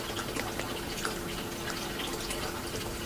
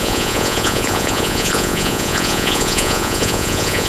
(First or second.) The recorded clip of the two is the first